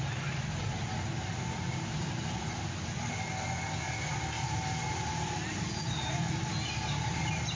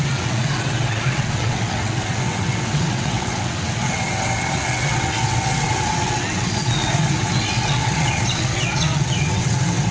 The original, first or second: first